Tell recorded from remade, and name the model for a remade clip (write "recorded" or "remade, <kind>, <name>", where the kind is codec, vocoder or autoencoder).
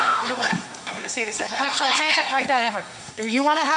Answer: remade, codec, SNAC